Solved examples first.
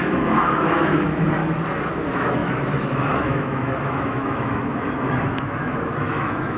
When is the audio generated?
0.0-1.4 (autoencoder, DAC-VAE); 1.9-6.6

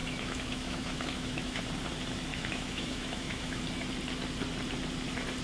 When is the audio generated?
0.0-1.6 (autoencoder, DAC-VAE); 2.3-3.6

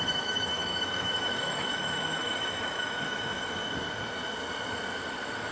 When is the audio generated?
0.0-3.6 (autoencoder, DAC-VAE)

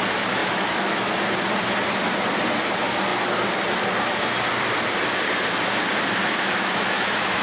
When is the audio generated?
0.4-1.1 (autoencoder, DAC-VAE); 6.2-7.4

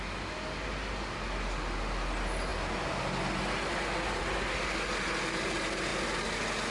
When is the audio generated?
none